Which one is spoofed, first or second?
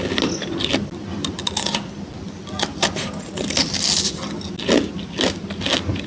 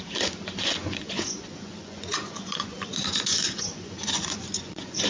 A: second